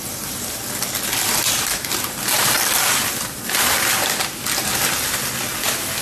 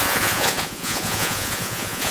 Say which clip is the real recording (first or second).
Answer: first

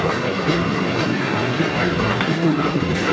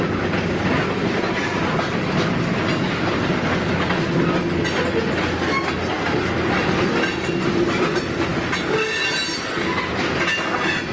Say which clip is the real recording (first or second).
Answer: second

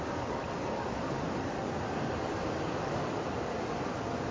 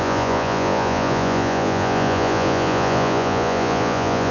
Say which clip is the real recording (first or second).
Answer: first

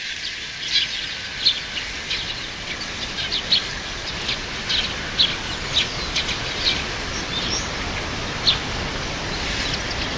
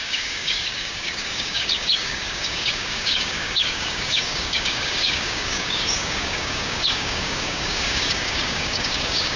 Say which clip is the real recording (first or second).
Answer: first